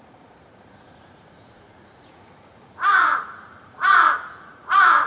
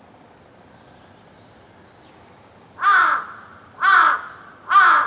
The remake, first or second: first